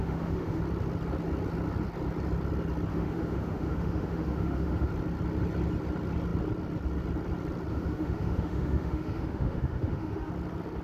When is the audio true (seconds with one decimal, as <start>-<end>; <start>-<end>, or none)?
0.6-2.9; 4.9-7.7; 10.3-10.8